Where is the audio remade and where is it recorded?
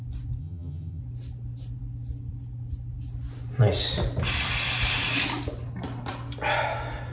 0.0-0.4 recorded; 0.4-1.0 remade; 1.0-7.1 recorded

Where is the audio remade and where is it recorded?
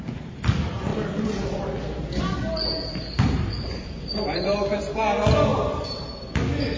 0.0-0.9 recorded; 0.9-5.0 remade; 5.0-5.5 recorded; 5.5-6.2 remade; 6.2-6.8 recorded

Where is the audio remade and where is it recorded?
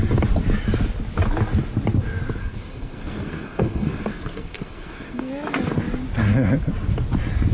0.0-2.4 recorded; 2.4-5.3 remade; 5.3-7.5 recorded